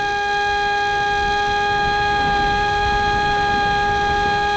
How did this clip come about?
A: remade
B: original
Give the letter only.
B